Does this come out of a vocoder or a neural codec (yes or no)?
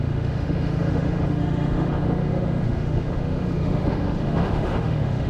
yes